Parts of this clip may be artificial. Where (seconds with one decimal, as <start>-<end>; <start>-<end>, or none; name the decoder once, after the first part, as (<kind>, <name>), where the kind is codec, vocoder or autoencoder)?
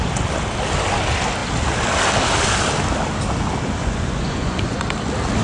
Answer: 3.8-4.8 (vocoder, Vocos)